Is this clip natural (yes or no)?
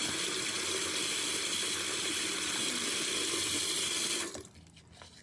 yes